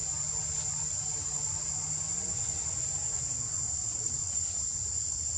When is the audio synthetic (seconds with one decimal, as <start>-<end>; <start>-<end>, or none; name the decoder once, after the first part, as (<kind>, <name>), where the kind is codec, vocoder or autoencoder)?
3.8-4.6 (vocoder, Vocos)